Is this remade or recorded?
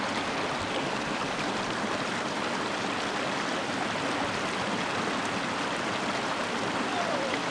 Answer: recorded